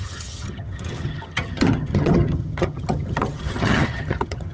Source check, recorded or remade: remade